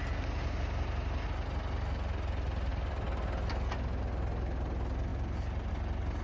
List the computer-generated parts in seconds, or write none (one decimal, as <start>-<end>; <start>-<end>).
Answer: 2.7-3.5